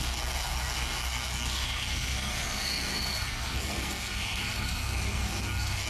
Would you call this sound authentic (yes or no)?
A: no